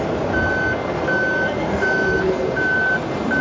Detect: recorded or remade recorded